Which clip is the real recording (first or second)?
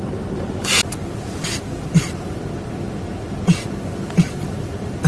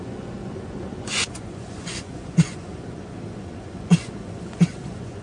first